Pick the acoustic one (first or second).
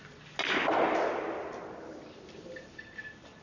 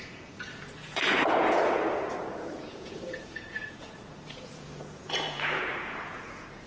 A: first